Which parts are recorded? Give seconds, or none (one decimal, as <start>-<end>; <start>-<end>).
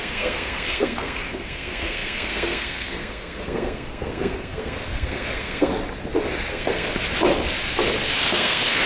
5.7-6.5; 6.9-8.2